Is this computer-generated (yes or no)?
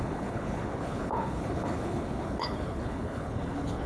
yes